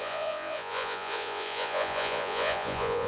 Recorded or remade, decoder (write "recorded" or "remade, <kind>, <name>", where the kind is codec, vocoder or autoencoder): remade, vocoder, Vocos